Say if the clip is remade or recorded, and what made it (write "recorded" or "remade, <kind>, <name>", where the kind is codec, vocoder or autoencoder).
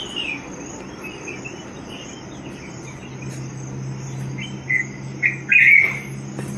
recorded